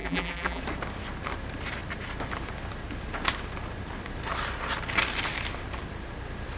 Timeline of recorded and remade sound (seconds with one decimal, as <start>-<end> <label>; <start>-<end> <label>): 0.0-0.6 remade; 0.6-6.6 recorded